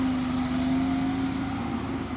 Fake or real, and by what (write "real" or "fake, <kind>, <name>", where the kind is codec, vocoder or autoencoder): real